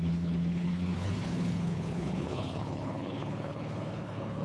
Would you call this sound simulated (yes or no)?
yes